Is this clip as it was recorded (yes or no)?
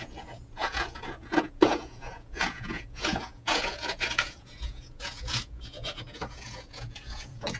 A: no